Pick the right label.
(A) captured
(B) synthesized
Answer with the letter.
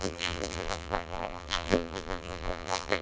B